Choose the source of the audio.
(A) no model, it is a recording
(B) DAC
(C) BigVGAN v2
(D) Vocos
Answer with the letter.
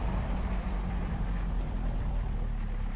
C